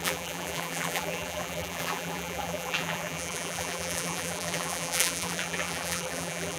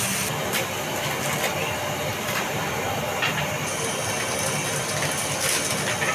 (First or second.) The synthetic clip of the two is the first